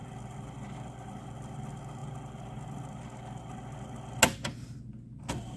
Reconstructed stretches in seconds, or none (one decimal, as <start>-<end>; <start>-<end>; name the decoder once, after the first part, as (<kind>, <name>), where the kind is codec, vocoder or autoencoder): none